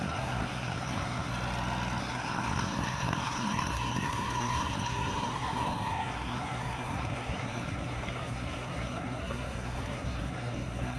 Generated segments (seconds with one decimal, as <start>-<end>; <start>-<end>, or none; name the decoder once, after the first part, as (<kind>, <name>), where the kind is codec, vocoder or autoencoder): 0.0-1.3 (codec, SNAC); 2.0-11.0